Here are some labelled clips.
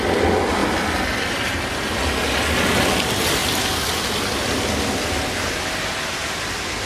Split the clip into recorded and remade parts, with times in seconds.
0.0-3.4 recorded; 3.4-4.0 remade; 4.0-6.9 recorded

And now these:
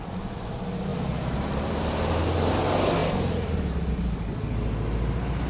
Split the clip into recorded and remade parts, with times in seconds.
0.0-0.9 recorded; 0.9-1.9 remade; 1.9-3.0 recorded; 3.0-3.9 remade; 3.9-5.5 recorded

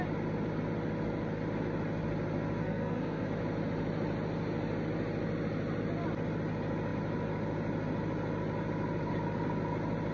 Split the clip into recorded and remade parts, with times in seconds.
0.0-2.6 recorded; 2.6-3.3 remade; 3.3-10.1 recorded

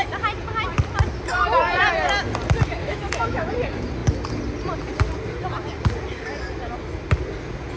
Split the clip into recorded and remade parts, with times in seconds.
0.0-2.8 recorded; 2.8-3.5 remade; 3.5-7.8 recorded

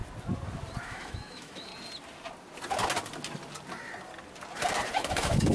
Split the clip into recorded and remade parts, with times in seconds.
0.0-0.8 recorded; 0.8-1.7 remade; 1.7-4.9 recorded; 4.9-5.5 remade

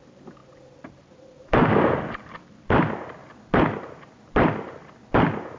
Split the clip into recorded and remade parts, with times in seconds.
0.0-5.6 recorded

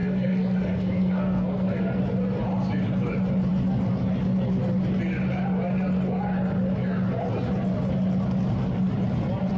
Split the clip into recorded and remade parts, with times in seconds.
0.0-2.0 remade; 2.0-9.6 recorded